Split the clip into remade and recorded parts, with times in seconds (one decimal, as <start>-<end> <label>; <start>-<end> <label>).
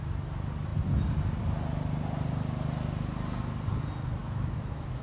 0.0-4.2 recorded; 4.2-5.0 remade